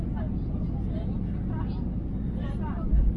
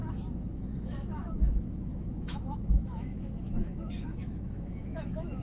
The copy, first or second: second